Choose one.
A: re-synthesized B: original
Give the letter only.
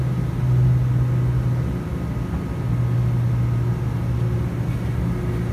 B